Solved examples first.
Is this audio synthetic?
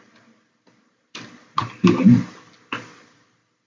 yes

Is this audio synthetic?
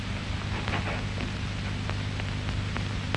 no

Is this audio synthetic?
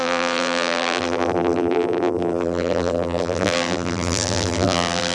yes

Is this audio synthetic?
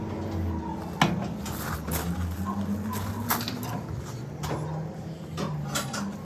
no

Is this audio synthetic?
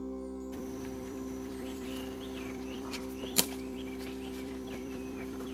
yes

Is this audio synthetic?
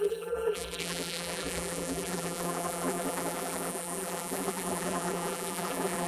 yes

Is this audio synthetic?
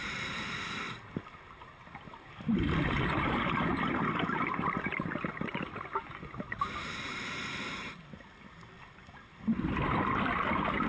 no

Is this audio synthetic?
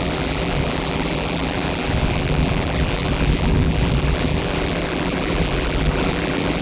yes